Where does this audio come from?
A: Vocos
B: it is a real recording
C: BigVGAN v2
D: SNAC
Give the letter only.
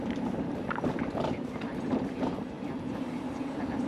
C